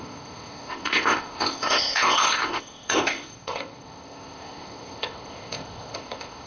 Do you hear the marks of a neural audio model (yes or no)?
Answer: yes